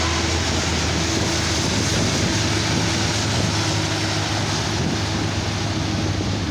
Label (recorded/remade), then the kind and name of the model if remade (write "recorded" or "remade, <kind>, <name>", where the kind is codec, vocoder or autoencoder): recorded